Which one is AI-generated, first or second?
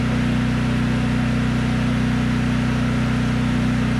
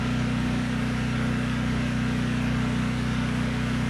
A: second